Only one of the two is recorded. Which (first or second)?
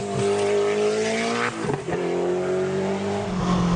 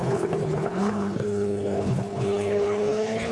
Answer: first